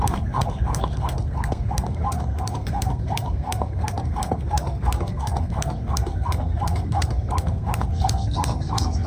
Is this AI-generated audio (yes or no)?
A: yes